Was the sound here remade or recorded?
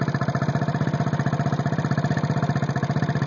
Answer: recorded